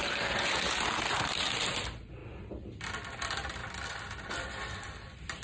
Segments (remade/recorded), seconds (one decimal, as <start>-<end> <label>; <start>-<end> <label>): 0.0-5.4 recorded